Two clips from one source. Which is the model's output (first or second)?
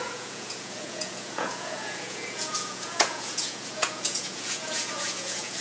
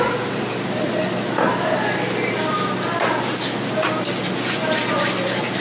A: first